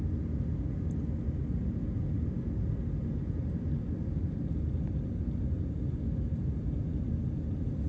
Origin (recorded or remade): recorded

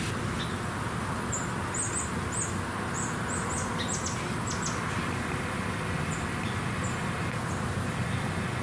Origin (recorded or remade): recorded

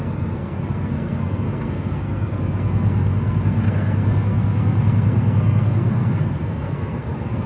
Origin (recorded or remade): remade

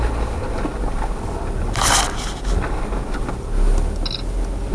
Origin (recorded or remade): recorded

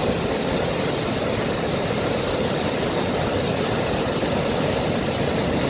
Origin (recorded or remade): recorded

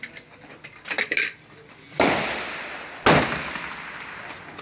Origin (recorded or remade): recorded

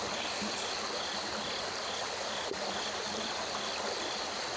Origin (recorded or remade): recorded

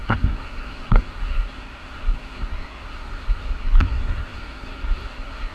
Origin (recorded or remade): remade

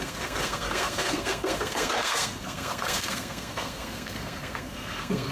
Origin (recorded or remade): remade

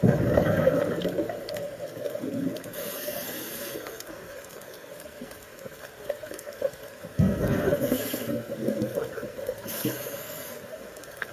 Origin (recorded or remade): remade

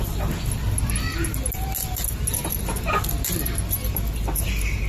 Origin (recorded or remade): recorded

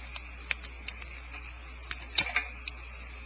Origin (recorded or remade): recorded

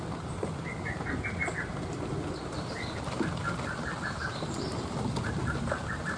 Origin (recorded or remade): recorded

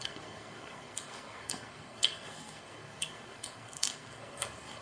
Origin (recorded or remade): remade